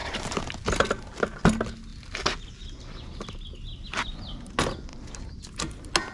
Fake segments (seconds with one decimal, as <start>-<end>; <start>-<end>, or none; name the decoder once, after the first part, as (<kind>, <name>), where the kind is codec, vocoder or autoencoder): 0.0-0.9 (vocoder, BigVGAN v2); 4.9-5.4